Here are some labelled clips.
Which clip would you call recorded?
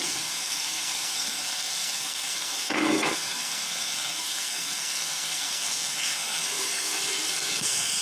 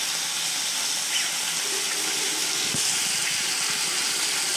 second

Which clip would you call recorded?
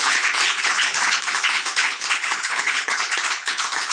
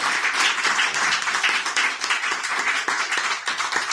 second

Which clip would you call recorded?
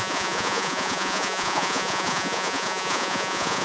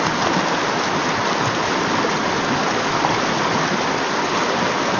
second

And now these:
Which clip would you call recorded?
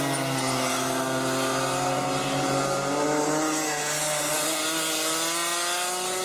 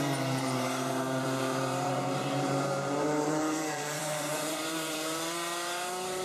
first